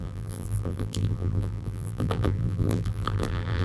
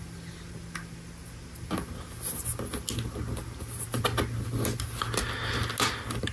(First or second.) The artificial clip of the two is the first